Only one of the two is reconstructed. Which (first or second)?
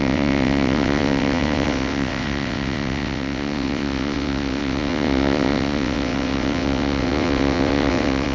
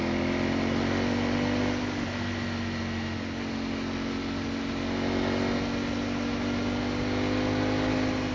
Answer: first